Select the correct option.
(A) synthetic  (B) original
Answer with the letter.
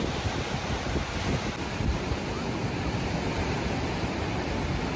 B